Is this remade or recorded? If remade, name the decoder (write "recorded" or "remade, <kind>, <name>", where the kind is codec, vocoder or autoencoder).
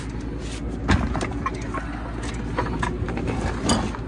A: recorded